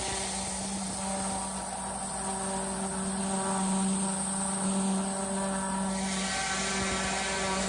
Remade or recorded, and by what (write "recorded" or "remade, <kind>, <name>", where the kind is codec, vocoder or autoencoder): recorded